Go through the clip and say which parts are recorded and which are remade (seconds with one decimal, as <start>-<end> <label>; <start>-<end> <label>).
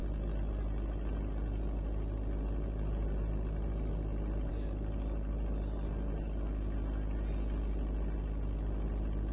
0.0-9.3 recorded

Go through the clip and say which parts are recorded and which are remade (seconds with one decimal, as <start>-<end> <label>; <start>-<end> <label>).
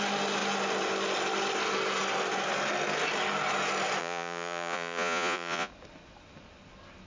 0.0-4.0 recorded; 4.0-5.7 remade; 5.7-7.1 recorded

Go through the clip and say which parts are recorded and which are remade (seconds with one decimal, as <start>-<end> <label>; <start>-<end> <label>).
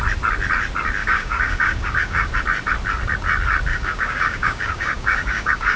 0.0-1.0 recorded; 1.0-2.3 remade; 2.3-3.7 recorded; 3.7-5.8 remade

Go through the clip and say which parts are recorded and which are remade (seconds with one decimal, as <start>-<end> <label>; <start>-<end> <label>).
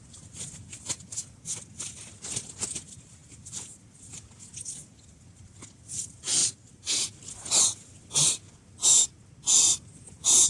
0.0-6.4 recorded; 6.4-7.3 remade; 7.3-10.5 recorded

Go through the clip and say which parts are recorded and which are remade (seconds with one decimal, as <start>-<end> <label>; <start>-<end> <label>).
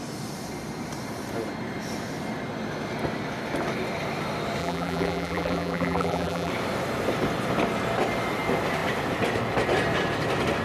0.0-4.6 recorded; 4.6-6.5 remade; 6.5-10.6 recorded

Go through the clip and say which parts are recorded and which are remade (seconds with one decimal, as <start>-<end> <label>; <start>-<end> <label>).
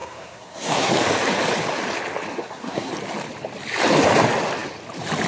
0.0-0.9 remade; 0.9-2.3 recorded; 2.3-2.9 remade; 2.9-5.3 recorded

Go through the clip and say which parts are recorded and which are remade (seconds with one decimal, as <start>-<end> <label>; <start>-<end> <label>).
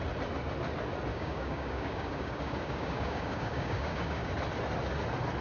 0.0-1.1 recorded; 1.1-4.3 remade; 4.3-5.4 recorded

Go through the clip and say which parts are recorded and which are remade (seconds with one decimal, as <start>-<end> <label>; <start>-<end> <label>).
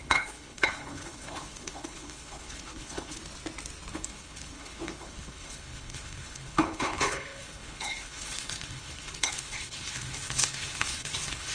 0.0-3.2 remade; 3.2-3.9 recorded; 3.9-11.5 remade